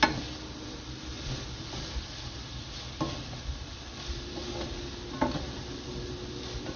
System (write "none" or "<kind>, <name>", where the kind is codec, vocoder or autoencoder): none